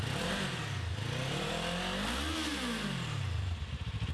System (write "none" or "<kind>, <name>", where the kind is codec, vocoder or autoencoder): none